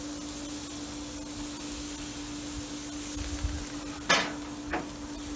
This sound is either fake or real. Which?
real